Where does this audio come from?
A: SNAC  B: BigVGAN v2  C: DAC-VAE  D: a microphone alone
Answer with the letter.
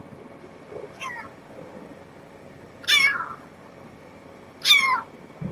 D